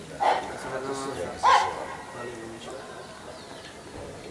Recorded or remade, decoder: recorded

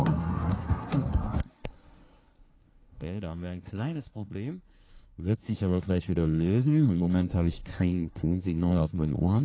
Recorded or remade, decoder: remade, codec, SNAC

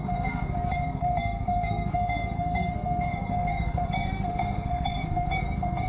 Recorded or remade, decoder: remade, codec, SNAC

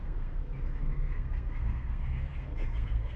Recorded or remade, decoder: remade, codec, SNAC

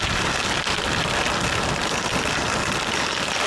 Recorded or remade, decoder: recorded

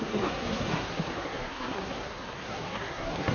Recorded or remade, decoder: remade, codec, SNAC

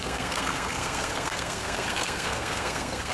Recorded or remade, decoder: remade, codec, SNAC